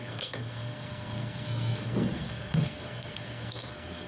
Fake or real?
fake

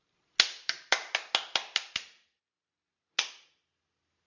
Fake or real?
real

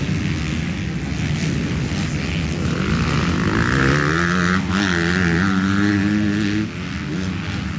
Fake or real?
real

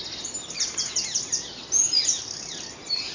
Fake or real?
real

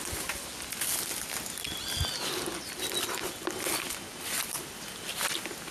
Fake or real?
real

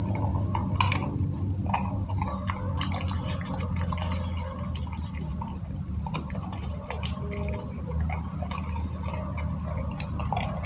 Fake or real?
real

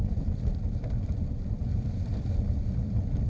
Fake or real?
real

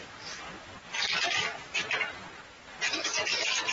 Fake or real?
real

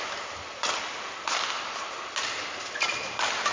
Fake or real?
real